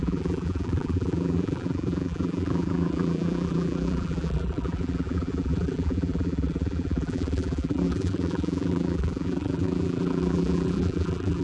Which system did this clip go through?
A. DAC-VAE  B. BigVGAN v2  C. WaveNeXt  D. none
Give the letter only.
B